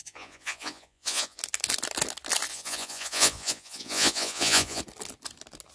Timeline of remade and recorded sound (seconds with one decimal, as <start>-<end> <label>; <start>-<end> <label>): 0.0-1.4 remade; 1.4-2.5 recorded; 2.5-4.8 remade; 4.8-5.7 recorded